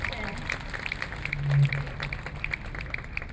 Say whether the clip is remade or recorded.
recorded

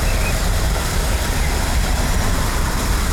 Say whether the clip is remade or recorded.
remade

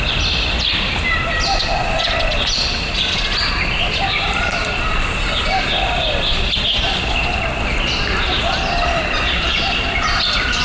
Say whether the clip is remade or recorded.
recorded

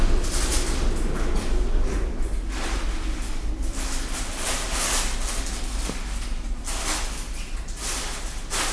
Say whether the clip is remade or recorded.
recorded